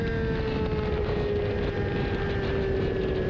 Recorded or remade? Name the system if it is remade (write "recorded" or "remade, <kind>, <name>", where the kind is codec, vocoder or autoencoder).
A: recorded